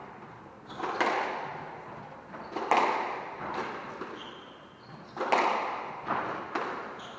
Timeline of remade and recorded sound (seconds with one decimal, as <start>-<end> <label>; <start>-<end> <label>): 0.0-7.2 recorded

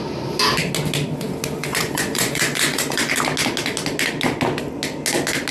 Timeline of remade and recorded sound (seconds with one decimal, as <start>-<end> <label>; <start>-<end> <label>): 0.0-1.6 recorded; 1.6-3.1 remade; 3.1-5.5 recorded

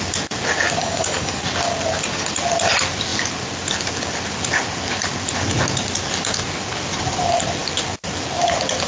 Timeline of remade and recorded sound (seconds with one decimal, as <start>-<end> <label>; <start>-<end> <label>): 0.0-0.8 recorded; 0.8-1.4 remade; 1.4-8.9 recorded

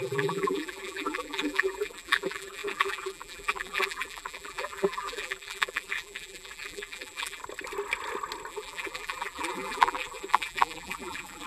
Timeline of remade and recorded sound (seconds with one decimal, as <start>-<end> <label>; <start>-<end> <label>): 0.0-7.4 remade; 7.4-8.5 recorded; 8.5-11.5 remade